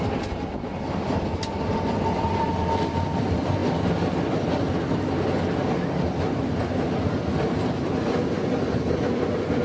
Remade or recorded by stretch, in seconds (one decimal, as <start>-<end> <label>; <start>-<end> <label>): 0.0-9.6 recorded